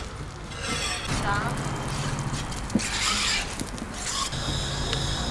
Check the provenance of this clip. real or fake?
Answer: real